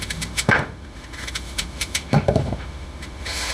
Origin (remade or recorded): remade